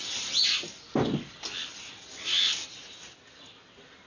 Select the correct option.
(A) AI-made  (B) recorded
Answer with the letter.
B